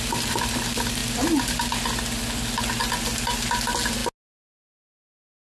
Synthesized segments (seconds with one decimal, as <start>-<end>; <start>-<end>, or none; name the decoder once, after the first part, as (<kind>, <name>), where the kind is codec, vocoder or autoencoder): none